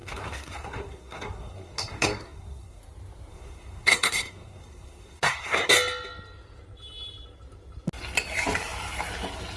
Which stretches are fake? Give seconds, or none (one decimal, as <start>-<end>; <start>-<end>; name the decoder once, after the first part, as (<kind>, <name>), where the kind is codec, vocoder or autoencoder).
0.0-2.8 (codec, SNAC); 3.3-5.7

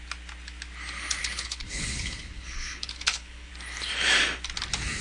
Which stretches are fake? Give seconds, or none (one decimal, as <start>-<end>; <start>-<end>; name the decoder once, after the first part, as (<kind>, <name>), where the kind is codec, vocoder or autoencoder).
1.2-3.5 (codec, HILCodec)

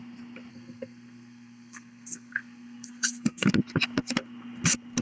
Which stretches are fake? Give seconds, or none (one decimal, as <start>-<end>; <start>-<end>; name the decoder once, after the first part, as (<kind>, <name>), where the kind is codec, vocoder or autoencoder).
0.5-3.5 (codec, SNAC)

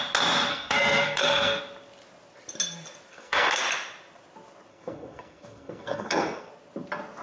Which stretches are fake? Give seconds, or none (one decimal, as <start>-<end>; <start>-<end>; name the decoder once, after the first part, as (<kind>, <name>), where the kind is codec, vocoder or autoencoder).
0.5-1.6 (codec, SNAC); 3.1-3.6; 4.7-6.5

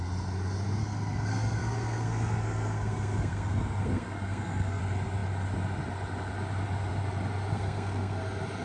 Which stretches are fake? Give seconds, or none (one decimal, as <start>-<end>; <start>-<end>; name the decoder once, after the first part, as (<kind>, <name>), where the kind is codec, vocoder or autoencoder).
0.8-4.8 (codec, SNAC); 7.5-8.2

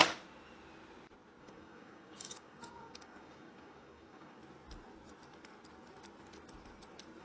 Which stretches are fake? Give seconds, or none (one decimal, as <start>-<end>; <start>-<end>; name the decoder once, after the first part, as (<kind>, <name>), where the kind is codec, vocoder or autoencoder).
1.4-4.4 (codec, DAC)

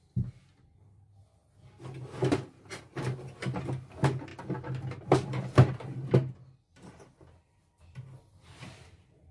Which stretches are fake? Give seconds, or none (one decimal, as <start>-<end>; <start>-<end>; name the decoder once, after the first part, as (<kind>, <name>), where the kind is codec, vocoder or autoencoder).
none

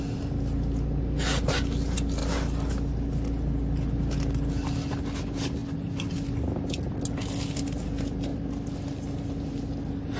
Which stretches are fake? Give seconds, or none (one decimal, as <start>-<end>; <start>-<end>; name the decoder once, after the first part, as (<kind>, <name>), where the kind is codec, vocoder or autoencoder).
none